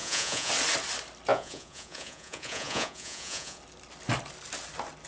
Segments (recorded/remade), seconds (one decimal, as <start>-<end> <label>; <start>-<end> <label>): 0.0-0.5 remade; 0.5-1.3 recorded; 1.3-3.6 remade; 3.6-5.1 recorded